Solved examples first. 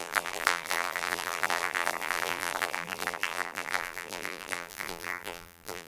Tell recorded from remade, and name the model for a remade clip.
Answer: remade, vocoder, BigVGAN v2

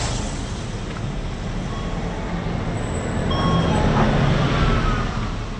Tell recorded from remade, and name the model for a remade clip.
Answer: recorded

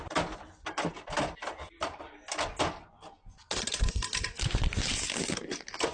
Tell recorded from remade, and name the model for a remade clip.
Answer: recorded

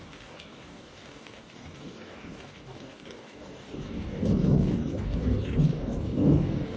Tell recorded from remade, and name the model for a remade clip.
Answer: remade, codec, DAC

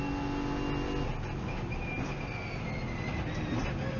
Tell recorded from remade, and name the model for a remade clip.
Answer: recorded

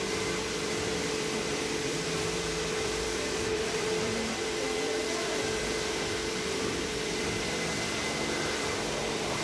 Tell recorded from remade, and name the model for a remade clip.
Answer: remade, vocoder, BigVGAN v2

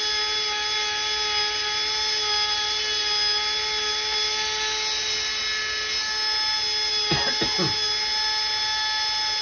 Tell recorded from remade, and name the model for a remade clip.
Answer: recorded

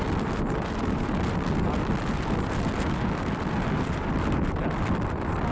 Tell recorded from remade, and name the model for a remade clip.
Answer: remade, vocoder, BigVGAN v2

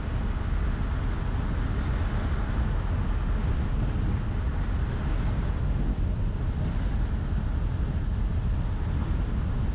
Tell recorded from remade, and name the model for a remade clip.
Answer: recorded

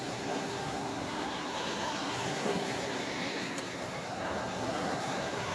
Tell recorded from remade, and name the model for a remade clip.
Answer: remade, codec, SNAC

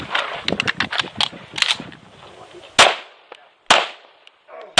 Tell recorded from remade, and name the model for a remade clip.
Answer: recorded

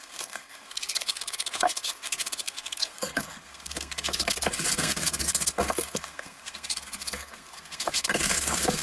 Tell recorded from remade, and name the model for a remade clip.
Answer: remade, codec, SNAC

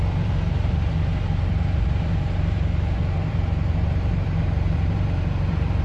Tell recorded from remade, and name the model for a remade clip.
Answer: remade, vocoder, BigVGAN v2